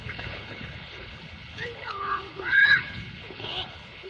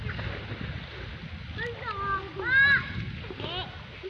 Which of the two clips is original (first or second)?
second